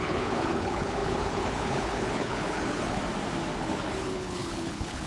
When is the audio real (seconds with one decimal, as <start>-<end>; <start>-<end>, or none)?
3.0-3.6